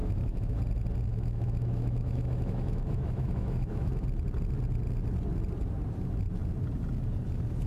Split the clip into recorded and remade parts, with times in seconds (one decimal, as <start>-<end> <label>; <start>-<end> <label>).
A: 0.0-0.6 remade; 0.6-1.1 recorded; 1.1-4.0 remade; 4.0-7.7 recorded

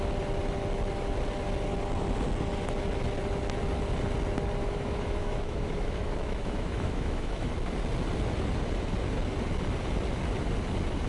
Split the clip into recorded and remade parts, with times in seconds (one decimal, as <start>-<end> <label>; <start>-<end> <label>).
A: 0.0-4.6 recorded; 4.6-7.5 remade; 7.5-11.1 recorded